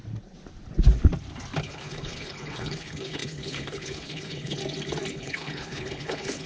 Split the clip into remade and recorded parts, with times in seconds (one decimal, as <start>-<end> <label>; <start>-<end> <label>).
0.0-1.6 recorded; 1.6-4.6 remade; 4.6-5.1 recorded; 5.1-6.5 remade